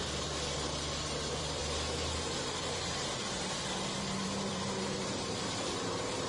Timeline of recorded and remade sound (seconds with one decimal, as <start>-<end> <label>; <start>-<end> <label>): 0.0-1.6 remade; 1.6-2.4 recorded; 2.4-6.3 remade